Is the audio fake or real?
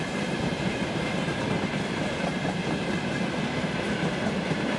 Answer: fake